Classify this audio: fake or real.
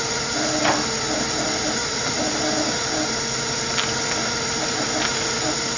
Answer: real